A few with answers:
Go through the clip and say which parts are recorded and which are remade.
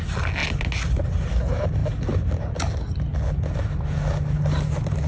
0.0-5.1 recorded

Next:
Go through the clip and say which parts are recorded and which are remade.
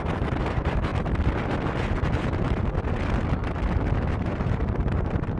0.0-0.9 remade; 0.9-4.1 recorded; 4.1-5.4 remade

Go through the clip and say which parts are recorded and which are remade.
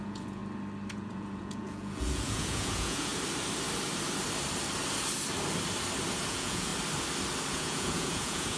0.0-0.4 remade; 0.4-0.9 recorded; 0.9-3.1 remade; 3.1-6.1 recorded; 6.1-6.7 remade; 6.7-7.5 recorded; 7.5-8.6 remade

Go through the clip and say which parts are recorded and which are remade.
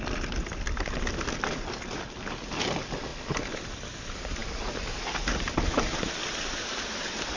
0.0-7.4 recorded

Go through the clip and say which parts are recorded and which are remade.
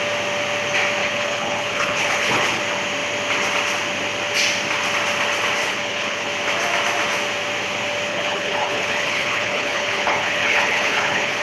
0.0-1.0 recorded; 1.0-2.6 remade; 2.6-5.6 recorded; 5.6-6.3 remade; 6.3-8.1 recorded; 8.1-11.4 remade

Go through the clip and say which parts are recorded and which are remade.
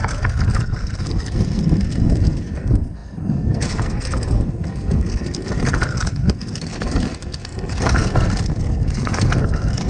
0.0-9.9 remade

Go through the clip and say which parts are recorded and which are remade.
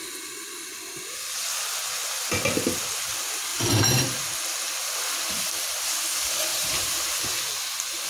0.0-3.5 recorded; 3.5-4.0 remade; 4.0-6.5 recorded; 6.5-7.2 remade; 7.2-8.1 recorded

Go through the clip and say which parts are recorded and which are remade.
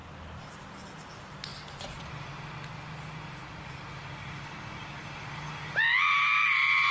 0.0-6.3 recorded; 6.3-6.9 remade